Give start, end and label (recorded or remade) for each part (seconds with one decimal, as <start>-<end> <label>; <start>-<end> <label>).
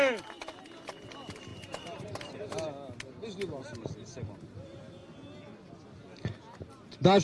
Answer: 0.0-1.5 recorded; 1.5-2.3 remade; 2.3-7.2 recorded